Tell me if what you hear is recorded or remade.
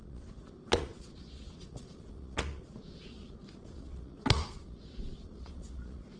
remade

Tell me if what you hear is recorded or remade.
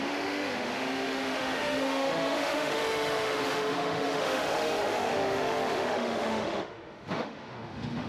remade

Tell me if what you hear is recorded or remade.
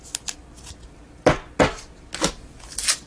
recorded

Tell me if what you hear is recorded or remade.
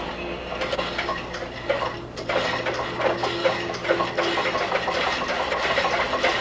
recorded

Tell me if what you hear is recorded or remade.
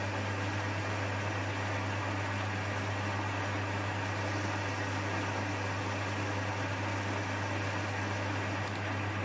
recorded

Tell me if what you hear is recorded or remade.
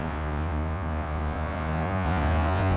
remade